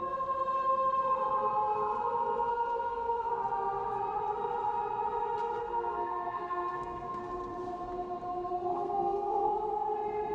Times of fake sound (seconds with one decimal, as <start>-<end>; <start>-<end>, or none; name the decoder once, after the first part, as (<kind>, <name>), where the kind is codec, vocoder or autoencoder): 2.5-3.3 (codec, SNAC); 5.6-7.2; 8.7-9.5